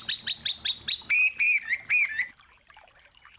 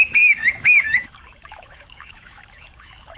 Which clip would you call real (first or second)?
first